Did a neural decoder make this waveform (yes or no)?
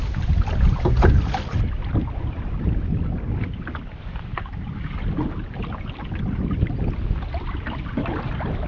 no